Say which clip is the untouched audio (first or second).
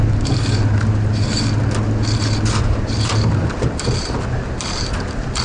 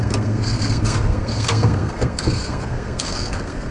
first